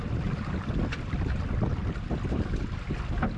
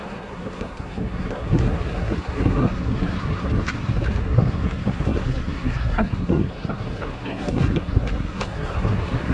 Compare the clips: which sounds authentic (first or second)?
first